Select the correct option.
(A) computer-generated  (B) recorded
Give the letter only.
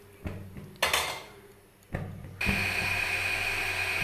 B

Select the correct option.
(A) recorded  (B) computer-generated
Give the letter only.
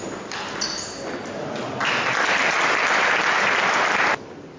A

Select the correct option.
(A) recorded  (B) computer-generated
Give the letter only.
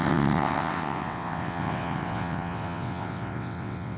B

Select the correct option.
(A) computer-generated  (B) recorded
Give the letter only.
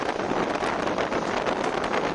B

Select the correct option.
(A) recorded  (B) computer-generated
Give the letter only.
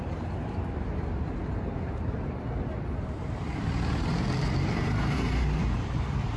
B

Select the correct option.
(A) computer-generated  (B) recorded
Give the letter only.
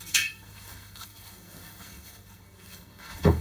A